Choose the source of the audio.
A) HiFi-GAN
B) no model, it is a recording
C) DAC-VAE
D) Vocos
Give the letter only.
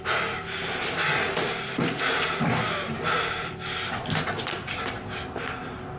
B